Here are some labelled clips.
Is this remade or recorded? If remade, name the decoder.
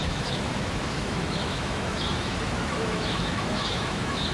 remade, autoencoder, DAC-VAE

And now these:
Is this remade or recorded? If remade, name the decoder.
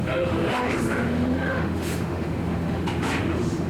remade, autoencoder, DAC-VAE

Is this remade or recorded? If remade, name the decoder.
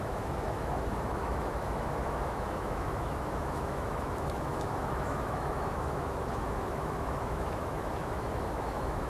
remade, autoencoder, DAC-VAE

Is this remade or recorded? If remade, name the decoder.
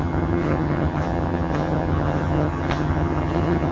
remade, vocoder, HiFi-GAN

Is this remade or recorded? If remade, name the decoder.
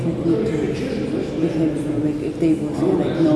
recorded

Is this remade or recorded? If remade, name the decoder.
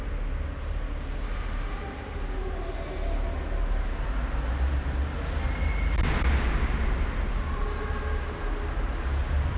recorded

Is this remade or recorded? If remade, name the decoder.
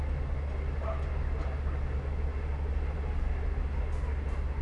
recorded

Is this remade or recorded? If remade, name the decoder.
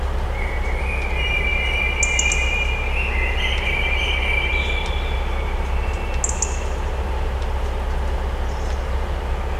recorded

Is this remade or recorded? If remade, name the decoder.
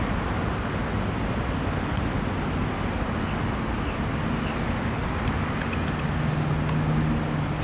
recorded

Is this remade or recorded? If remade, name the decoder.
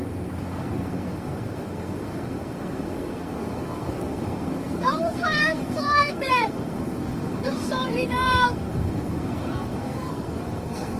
remade, codec, SNAC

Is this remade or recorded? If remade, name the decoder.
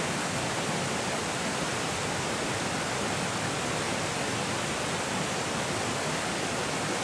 recorded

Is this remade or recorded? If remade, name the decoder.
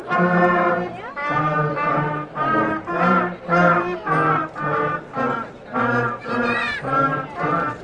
remade, vocoder, BigVGAN v2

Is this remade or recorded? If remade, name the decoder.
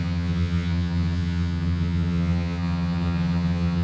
remade, vocoder, HiFi-GAN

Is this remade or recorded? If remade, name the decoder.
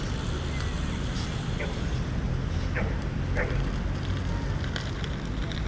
recorded